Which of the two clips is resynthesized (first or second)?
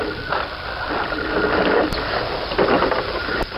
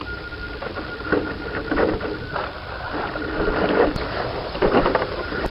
second